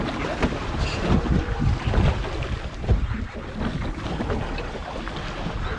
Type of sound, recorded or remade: recorded